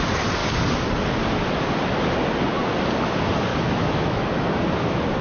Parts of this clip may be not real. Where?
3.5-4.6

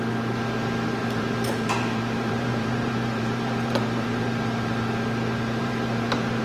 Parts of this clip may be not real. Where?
0.6-4.4; 5.6-6.4

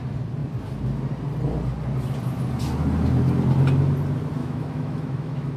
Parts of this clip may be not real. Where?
4.4-5.6

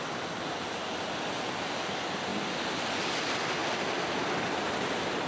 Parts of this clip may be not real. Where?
none

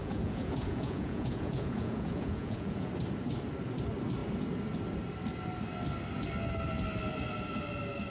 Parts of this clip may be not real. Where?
0.0-2.9

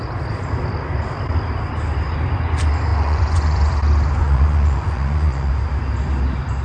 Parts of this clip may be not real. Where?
2.9-3.7; 4.2-5.5